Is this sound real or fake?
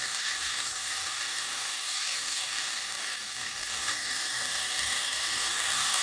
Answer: fake